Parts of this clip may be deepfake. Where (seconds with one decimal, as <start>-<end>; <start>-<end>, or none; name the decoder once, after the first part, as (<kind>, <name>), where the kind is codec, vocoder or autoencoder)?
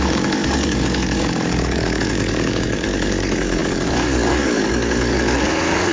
0.0-5.9 (codec, DAC)